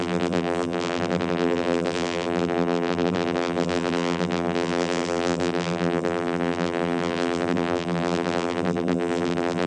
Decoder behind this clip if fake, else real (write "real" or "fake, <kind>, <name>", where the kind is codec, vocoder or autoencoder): fake, vocoder, BigVGAN v2